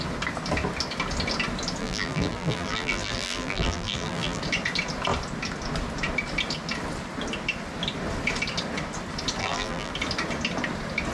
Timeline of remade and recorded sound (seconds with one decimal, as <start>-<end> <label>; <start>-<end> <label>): 0.0-1.8 recorded; 1.8-4.4 remade; 4.4-9.4 recorded; 9.4-9.9 remade; 9.9-11.1 recorded